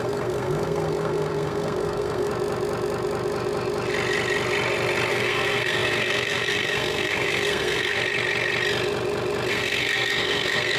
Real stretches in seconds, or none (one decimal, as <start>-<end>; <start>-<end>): 2.3-5.1; 8.0-9.5